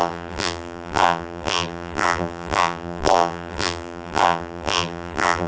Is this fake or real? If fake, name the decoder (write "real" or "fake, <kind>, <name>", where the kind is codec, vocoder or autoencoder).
fake, vocoder, BigVGAN v2